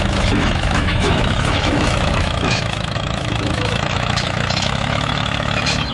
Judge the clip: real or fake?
fake